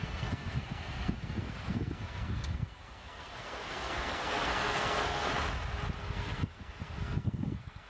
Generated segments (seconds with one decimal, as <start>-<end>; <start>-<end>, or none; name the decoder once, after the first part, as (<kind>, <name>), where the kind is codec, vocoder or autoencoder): 0.0-5.3 (codec, SNAC); 6.0-7.9